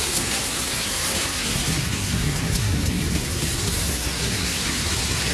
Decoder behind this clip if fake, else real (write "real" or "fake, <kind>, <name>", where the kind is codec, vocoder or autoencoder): fake, codec, SNAC